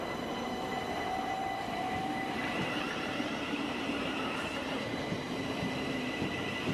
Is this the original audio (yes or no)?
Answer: no